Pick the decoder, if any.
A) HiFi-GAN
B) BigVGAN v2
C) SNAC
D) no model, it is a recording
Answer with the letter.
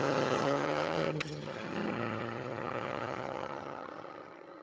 A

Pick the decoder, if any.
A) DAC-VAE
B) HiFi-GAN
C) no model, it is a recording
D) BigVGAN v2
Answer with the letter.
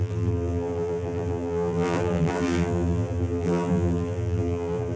D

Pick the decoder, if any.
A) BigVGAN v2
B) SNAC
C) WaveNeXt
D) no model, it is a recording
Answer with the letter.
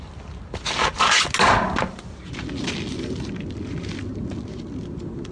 D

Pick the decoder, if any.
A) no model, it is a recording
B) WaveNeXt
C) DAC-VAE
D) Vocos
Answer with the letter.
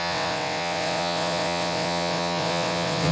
B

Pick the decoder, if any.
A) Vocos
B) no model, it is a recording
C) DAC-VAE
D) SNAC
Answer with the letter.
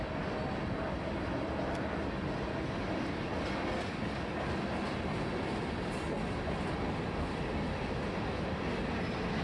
B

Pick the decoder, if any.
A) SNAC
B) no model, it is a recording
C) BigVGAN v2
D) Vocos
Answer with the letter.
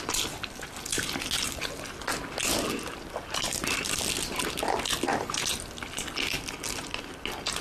B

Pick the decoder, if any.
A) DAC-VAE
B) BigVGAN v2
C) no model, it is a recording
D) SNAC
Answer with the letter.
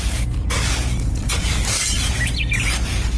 C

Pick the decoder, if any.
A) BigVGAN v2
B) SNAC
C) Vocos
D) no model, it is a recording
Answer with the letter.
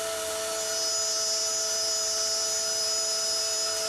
D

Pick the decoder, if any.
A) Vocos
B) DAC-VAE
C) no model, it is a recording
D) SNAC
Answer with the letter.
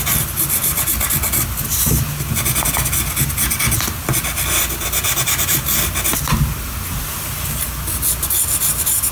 C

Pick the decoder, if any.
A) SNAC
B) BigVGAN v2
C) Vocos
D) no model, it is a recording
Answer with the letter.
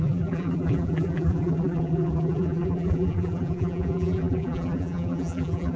B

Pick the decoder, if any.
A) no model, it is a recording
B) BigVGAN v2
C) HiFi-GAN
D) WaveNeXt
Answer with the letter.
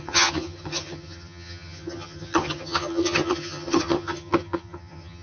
C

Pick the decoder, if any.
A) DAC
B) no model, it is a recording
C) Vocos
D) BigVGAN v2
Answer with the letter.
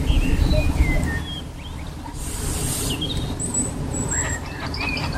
B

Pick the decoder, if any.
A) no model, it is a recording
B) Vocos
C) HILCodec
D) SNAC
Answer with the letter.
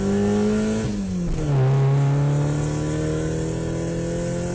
A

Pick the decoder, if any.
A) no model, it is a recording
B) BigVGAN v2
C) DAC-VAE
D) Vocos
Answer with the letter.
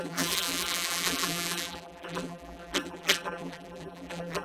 B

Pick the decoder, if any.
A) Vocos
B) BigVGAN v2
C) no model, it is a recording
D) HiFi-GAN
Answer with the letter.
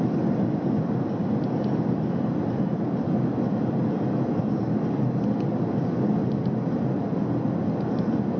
C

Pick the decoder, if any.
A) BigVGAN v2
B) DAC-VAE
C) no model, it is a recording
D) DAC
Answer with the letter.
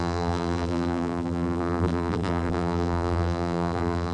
A